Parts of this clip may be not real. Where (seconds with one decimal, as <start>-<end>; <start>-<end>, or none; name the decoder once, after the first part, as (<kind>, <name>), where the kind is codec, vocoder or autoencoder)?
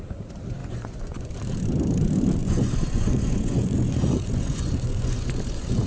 0.6-1.3 (vocoder, Vocos); 2.4-5.9